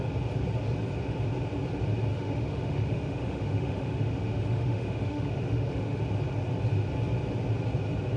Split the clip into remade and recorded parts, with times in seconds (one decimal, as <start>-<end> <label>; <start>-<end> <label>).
0.0-2.1 recorded; 2.1-6.0 remade; 6.0-8.2 recorded

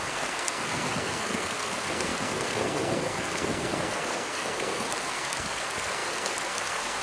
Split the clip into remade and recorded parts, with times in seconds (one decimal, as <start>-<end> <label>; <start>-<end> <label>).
0.0-7.0 remade

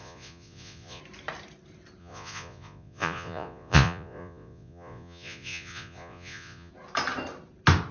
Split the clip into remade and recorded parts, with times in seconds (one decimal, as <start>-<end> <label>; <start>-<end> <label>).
0.0-1.0 remade; 1.0-2.0 recorded; 2.0-6.7 remade; 6.7-7.9 recorded

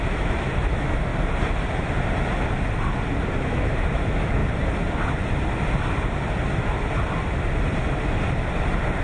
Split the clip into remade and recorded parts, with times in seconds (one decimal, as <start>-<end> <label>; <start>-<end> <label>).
0.0-1.1 remade; 1.1-3.4 recorded; 3.4-4.4 remade; 4.4-9.0 recorded

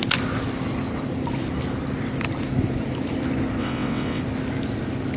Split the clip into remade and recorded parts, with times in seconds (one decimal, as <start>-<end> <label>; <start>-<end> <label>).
0.0-3.6 recorded; 3.6-4.2 remade; 4.2-5.2 recorded

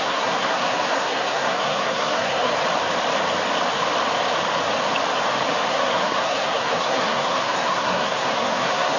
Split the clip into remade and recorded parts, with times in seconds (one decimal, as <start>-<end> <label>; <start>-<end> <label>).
0.0-2.5 remade; 2.5-5.6 recorded; 5.6-9.0 remade

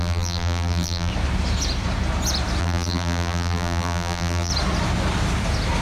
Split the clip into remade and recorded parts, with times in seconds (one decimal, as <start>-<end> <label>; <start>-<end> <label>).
0.0-1.1 remade; 1.1-2.6 recorded; 2.6-4.5 remade; 4.5-5.8 recorded

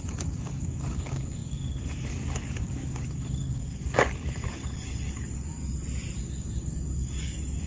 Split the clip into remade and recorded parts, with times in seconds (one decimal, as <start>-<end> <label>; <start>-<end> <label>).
0.0-5.6 remade; 5.6-6.2 recorded; 6.2-7.7 remade